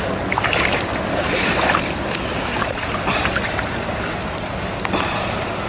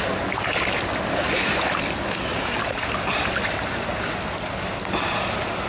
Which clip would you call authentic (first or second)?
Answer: second